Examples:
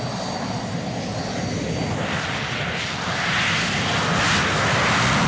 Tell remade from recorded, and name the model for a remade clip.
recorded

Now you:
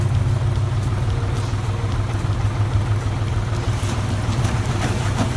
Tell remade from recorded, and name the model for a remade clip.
recorded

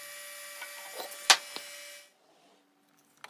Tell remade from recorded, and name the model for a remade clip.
recorded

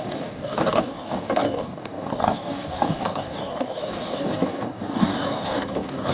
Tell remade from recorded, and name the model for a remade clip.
remade, codec, DAC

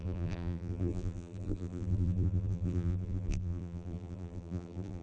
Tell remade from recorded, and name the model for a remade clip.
remade, vocoder, BigVGAN v2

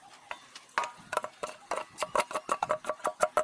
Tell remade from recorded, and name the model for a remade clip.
recorded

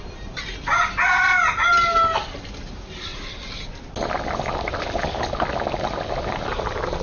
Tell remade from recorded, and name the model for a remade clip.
recorded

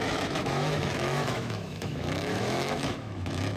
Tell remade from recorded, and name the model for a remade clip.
remade, autoencoder, DAC-VAE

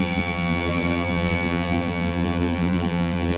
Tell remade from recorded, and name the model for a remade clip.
remade, vocoder, BigVGAN v2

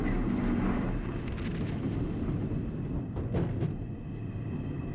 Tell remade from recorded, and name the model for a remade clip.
recorded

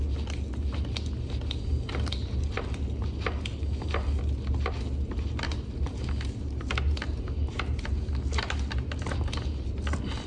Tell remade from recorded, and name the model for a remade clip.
recorded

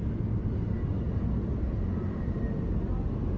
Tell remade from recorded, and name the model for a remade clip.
recorded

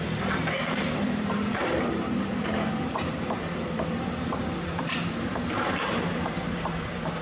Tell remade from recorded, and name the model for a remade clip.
remade, vocoder, BigVGAN v2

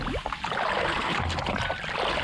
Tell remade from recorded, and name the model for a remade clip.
recorded